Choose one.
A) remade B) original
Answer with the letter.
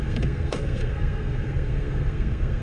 A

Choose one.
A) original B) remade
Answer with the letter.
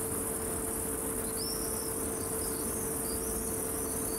A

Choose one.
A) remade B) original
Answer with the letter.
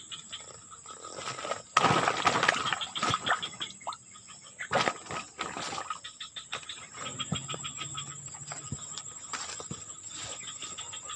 B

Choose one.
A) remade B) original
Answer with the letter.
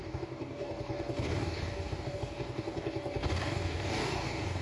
A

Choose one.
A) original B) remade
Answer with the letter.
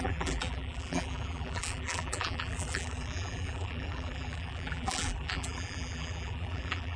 B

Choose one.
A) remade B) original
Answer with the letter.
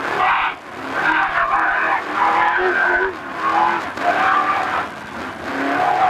B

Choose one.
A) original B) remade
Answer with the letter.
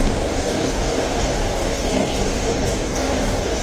B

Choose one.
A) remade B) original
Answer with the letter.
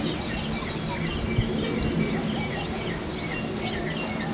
B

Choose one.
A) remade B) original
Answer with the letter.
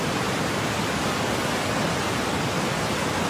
B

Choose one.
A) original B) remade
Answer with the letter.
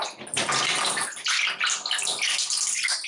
A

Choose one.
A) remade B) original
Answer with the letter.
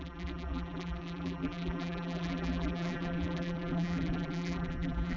A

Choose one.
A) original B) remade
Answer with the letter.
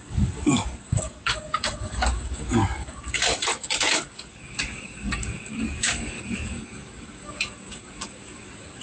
B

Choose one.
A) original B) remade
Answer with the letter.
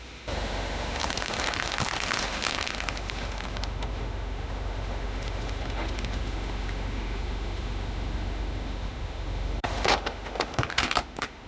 B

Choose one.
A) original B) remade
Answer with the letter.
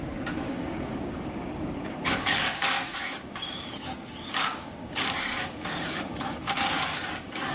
B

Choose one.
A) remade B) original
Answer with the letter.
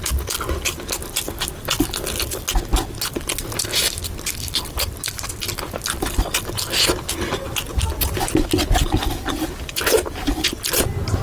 B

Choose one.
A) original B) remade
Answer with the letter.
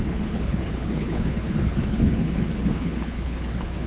B